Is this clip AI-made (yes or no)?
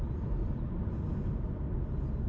no